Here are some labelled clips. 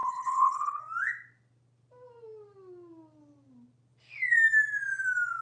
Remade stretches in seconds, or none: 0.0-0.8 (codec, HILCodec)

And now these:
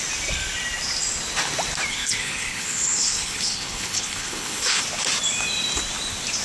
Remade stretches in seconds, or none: 1.9-4.8 (codec, HILCodec)

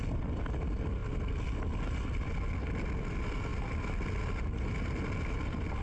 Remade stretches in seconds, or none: none

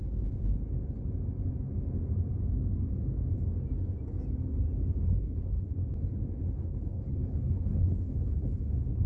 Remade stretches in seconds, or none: 5.0-5.8 (codec, HILCodec); 6.5-9.1

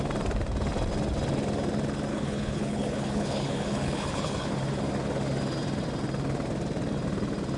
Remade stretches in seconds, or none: 2.1-4.5 (codec, HILCodec)

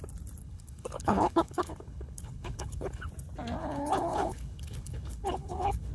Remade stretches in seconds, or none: 0.4-3.1 (codec, HILCodec); 3.6-5.9

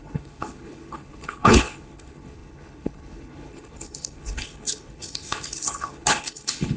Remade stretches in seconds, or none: 0.0-6.8 (codec, HILCodec)